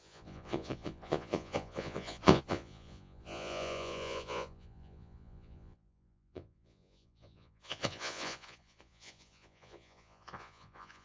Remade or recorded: remade